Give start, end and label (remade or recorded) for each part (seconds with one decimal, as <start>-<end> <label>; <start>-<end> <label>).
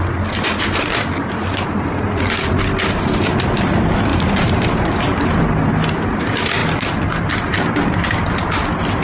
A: 0.0-4.1 recorded; 4.1-5.3 remade; 5.3-6.6 recorded; 6.6-7.5 remade; 7.5-9.0 recorded